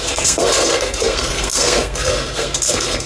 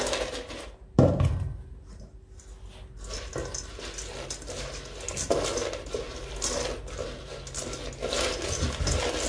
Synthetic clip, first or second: first